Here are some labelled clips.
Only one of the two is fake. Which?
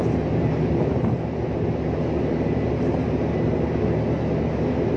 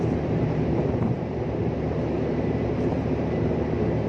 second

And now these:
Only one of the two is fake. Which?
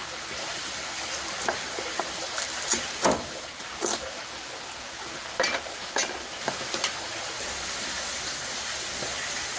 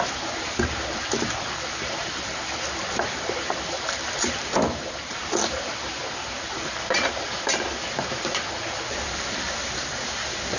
second